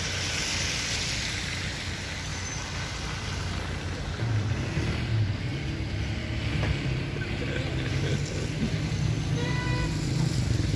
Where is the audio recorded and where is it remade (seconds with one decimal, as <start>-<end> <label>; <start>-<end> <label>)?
0.0-10.8 recorded